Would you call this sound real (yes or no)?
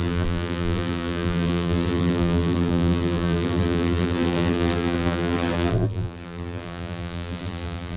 no